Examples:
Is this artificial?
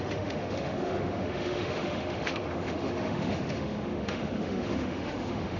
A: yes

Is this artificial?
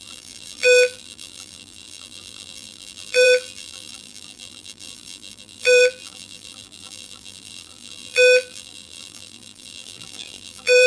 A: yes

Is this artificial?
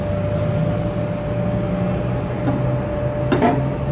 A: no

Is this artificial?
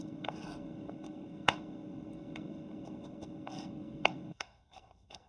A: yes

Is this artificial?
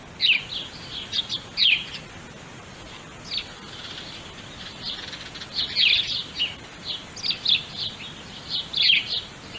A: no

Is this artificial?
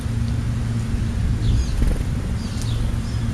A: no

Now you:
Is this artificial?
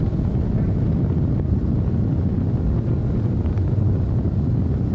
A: no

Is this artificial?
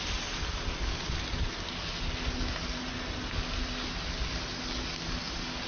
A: no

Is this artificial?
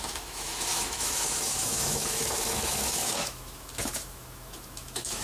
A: yes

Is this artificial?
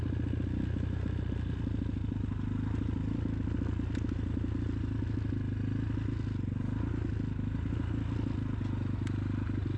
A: no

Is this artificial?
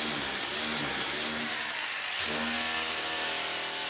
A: no